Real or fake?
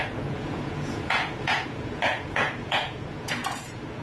fake